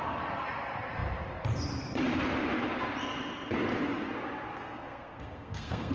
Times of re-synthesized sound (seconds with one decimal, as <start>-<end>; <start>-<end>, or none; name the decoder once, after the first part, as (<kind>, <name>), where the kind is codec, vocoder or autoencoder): 4.5-5.9 (codec, SNAC)